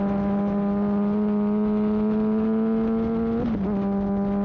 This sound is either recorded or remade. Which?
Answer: recorded